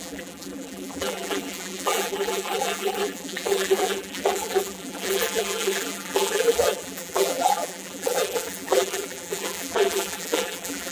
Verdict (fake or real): fake